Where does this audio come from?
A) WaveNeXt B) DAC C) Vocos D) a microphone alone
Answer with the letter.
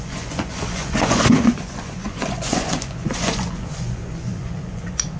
C